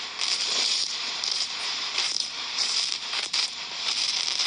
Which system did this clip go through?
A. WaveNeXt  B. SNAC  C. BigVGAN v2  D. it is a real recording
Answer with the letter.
C